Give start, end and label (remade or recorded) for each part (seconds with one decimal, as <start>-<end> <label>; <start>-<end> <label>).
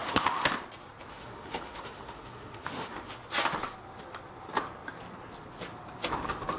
0.0-0.5 remade; 0.5-1.1 recorded; 1.1-3.1 remade; 3.1-6.6 recorded